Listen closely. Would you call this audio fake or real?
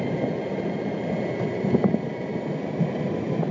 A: real